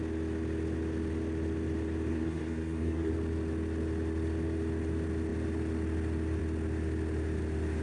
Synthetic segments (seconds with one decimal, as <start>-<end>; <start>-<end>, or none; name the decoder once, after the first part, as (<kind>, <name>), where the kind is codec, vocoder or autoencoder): 2.1-3.1 (codec, SNAC)